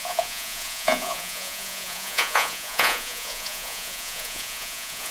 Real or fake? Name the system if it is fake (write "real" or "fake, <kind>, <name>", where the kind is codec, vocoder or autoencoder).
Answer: fake, vocoder, Vocos